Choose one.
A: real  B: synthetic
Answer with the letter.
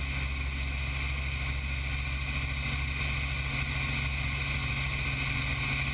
A